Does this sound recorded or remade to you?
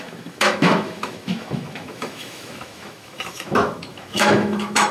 remade